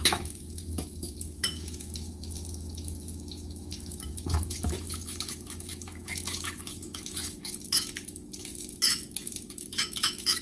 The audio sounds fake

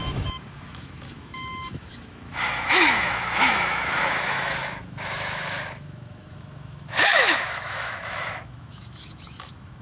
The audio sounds fake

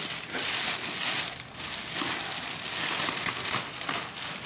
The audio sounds real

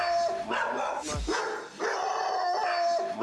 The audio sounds real